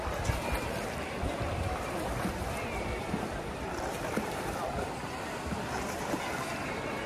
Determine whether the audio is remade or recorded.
remade